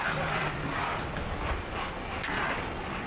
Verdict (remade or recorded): recorded